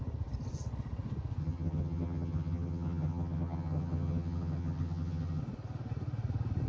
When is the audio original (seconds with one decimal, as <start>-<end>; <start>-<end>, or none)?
0.0-1.4; 5.4-6.7